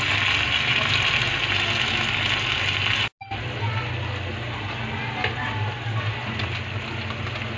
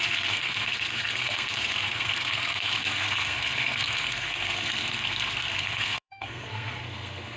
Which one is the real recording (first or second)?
first